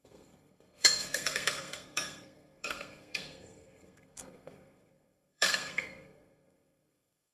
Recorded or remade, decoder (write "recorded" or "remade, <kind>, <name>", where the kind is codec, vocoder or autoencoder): remade, codec, SNAC